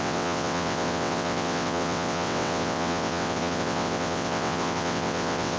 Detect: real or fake fake